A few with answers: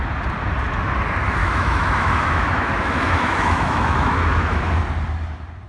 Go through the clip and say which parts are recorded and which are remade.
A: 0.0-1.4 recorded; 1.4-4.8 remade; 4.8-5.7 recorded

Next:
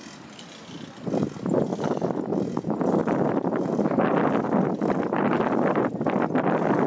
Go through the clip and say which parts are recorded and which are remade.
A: 0.0-6.9 recorded